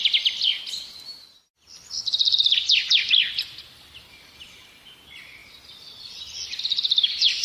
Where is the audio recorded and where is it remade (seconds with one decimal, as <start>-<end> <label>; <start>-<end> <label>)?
0.0-7.4 recorded